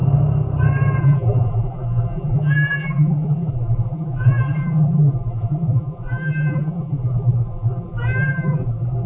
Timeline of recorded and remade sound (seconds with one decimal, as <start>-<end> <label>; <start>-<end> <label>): 0.0-1.0 recorded; 1.0-9.1 remade